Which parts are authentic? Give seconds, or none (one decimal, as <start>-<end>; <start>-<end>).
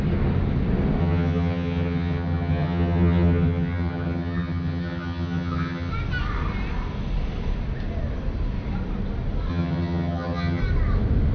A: 0.0-1.0; 5.9-9.5; 10.6-11.3